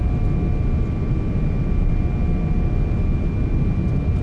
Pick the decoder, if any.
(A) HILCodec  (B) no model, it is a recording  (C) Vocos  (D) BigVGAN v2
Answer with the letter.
B